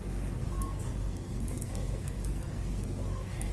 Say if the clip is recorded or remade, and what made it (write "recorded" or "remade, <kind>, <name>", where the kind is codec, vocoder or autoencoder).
remade, codec, SNAC